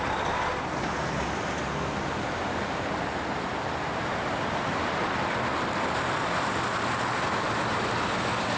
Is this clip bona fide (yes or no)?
yes